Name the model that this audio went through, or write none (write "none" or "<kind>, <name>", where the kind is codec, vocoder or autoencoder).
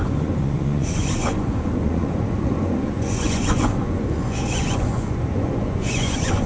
vocoder, Vocos